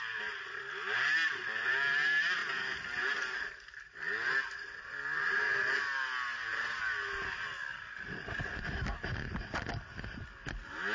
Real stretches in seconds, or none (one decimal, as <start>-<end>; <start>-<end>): 0.0-10.9